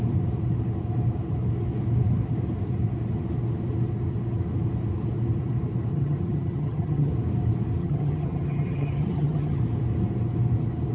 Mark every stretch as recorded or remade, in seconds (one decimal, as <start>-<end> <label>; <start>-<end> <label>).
0.0-5.9 recorded; 5.9-7.1 remade; 7.1-7.8 recorded; 7.8-9.6 remade; 9.6-10.9 recorded